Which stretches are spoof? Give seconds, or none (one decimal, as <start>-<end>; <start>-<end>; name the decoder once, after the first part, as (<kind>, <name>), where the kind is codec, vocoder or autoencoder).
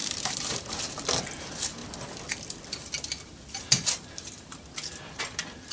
0.0-0.8 (vocoder, BigVGAN v2)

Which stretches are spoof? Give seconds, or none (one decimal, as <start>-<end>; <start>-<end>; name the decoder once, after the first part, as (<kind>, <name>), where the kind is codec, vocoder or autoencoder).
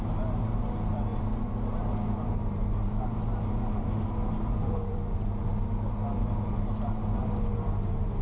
0.0-8.2 (vocoder, BigVGAN v2)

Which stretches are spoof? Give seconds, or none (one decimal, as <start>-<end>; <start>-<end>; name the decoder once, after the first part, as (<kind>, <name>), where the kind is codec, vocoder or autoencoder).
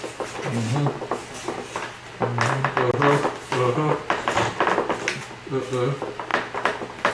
none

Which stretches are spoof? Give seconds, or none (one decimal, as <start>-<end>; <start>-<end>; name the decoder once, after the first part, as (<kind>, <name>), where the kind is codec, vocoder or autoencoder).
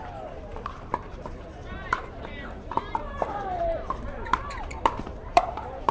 0.0-5.9 (vocoder, BigVGAN v2)